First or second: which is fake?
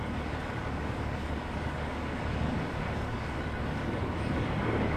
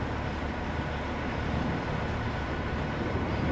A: first